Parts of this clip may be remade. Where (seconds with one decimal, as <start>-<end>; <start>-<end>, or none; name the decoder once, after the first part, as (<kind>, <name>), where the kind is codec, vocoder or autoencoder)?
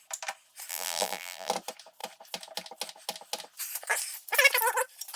0.7-1.5 (vocoder, BigVGAN v2)